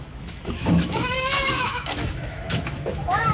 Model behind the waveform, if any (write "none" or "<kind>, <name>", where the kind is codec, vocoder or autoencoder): autoencoder, DAC-VAE